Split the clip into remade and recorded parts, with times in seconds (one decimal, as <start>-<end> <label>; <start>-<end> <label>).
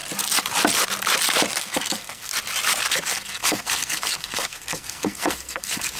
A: 0.0-1.6 recorded; 1.6-2.3 remade; 2.3-2.9 recorded; 2.9-6.0 remade